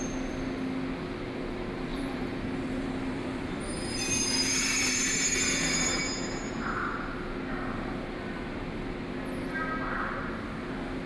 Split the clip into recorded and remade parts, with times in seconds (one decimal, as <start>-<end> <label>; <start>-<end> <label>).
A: 0.0-1.9 recorded; 1.9-6.0 remade; 6.0-11.1 recorded